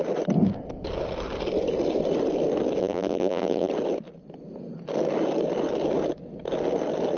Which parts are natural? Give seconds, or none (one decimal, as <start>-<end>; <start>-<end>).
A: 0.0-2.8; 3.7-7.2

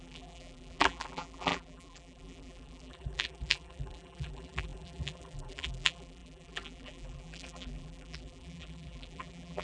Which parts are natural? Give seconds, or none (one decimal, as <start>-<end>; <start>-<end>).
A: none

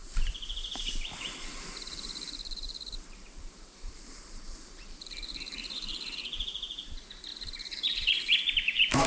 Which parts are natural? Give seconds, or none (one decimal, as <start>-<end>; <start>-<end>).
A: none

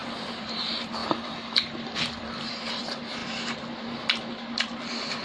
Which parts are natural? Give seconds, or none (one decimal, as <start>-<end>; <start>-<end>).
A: 0.6-1.0; 2.8-5.2

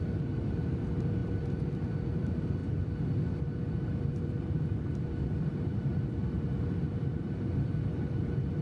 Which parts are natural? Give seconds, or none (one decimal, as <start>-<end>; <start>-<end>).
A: 2.6-3.8

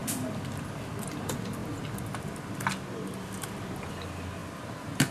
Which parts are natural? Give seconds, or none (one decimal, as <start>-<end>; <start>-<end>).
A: 0.0-5.1

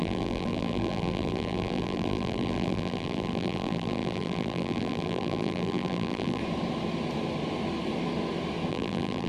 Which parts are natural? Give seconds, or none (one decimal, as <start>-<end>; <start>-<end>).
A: 6.4-8.7

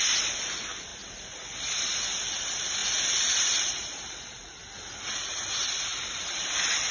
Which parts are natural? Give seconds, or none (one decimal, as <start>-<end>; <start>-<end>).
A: 0.9-2.3; 4.6-5.3